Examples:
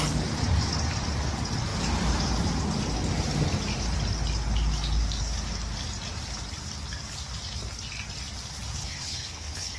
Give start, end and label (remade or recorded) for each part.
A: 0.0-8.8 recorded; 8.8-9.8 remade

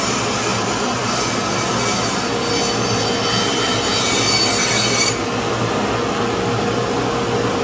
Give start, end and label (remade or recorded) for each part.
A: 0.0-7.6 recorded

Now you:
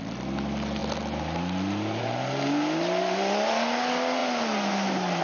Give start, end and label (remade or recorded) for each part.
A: 0.0-5.2 recorded